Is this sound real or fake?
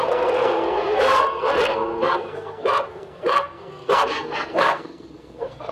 fake